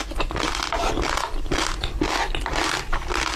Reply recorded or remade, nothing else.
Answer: recorded